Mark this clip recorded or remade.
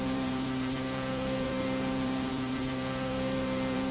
remade